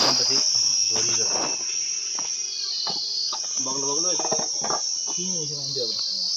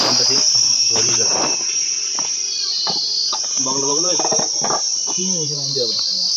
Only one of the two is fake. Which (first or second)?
second